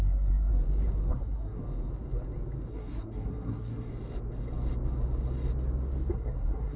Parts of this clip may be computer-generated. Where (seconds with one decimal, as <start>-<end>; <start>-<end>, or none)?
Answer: 0.0-0.5; 1.1-1.6; 2.7-3.9; 6.1-6.8